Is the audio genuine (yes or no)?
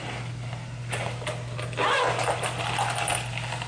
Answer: yes